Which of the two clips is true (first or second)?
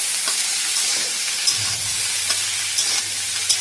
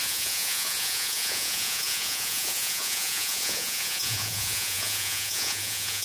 first